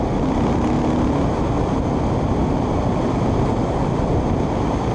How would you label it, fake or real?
real